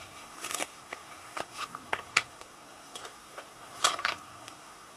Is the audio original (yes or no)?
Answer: no